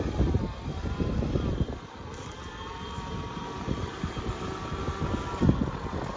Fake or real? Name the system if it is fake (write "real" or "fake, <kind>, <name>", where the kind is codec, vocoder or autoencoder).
real